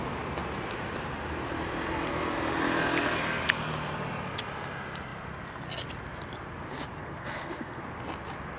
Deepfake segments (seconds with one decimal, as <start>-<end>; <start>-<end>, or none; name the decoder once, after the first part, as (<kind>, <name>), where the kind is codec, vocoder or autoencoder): 7.0-7.8 (codec, SNAC)

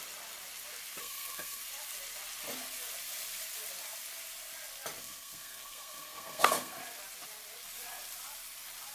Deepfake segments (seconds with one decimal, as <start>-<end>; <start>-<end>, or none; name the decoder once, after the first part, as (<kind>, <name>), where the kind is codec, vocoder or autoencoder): 1.0-1.6 (codec, SNAC); 5.0-6.8

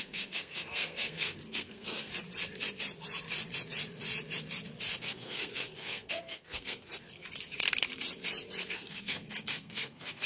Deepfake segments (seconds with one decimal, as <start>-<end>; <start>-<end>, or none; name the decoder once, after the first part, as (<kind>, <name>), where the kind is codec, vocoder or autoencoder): 0.0-2.1 (codec, SNAC); 5.0-6.9; 8.7-10.3

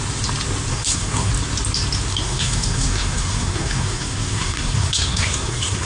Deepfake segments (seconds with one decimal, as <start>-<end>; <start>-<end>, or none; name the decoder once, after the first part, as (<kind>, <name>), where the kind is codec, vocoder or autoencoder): 0.7-1.3 (codec, SNAC); 2.1-5.9

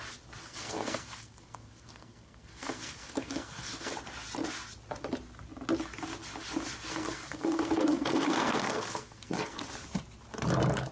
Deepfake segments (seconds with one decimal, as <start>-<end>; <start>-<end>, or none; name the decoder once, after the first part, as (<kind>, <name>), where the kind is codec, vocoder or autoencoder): 0.4-3.9 (codec, SNAC); 6.9-9.6